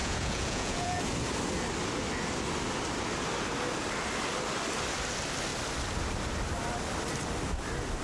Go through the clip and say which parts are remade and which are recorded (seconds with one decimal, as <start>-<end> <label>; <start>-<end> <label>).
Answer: 0.0-1.0 remade; 1.0-8.0 recorded